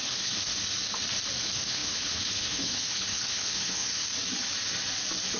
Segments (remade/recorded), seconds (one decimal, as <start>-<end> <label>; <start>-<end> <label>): 0.0-0.5 remade; 0.5-1.4 recorded; 1.4-4.0 remade; 4.0-5.4 recorded